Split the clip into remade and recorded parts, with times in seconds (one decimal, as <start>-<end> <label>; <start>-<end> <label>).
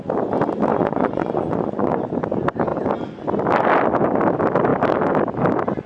0.0-0.7 recorded; 0.7-2.0 remade; 2.0-5.9 recorded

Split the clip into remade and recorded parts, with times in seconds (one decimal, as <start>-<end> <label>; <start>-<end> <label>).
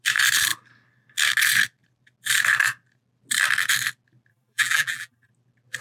0.0-4.3 recorded; 4.3-5.3 remade; 5.3-5.8 recorded